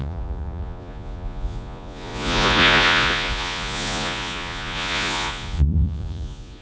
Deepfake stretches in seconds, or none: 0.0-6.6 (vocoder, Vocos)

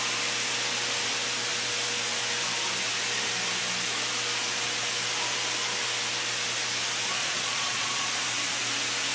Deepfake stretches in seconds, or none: 7.2-8.1 (vocoder, Vocos)

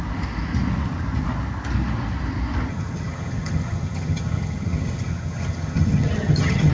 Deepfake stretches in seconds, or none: 2.7-6.7 (vocoder, HiFi-GAN)